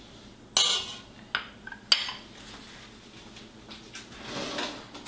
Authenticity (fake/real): real